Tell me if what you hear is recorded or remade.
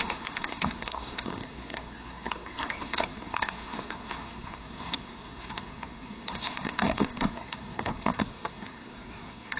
remade